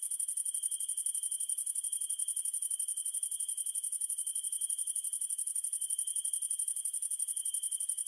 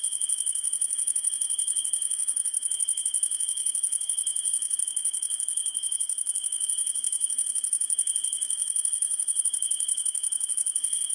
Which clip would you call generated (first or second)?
second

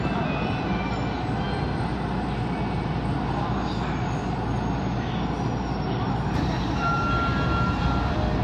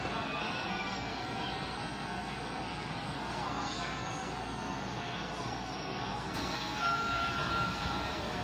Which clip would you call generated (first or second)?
second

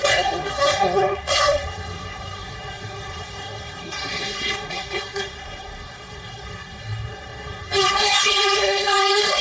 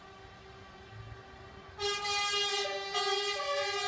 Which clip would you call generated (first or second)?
first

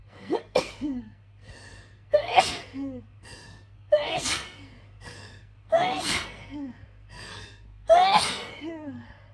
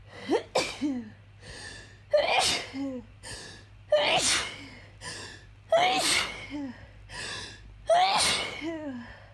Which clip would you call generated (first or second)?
first